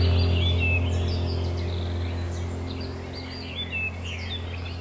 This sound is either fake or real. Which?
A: real